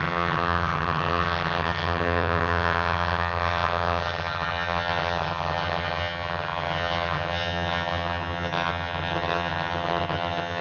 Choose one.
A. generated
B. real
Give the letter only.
A